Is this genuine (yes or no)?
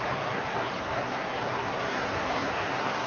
no